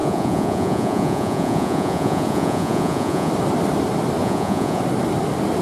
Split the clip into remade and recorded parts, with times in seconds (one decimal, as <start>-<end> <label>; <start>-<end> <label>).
0.0-3.3 remade; 3.3-4.2 recorded; 4.2-4.8 remade; 4.8-5.6 recorded

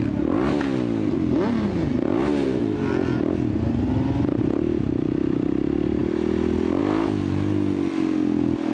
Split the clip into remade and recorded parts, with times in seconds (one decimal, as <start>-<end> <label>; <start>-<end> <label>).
0.0-8.7 recorded

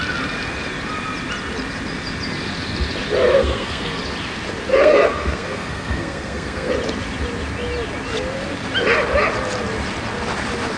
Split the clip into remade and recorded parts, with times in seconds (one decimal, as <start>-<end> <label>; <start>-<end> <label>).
0.0-3.4 recorded; 3.4-4.0 remade; 4.0-4.7 recorded; 4.7-6.7 remade; 6.7-10.8 recorded

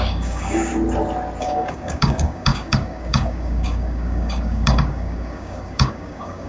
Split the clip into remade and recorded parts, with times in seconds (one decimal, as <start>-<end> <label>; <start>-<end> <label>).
0.0-0.7 remade; 0.7-1.4 recorded; 1.4-6.5 remade